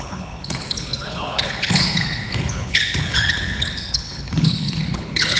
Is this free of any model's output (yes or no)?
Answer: no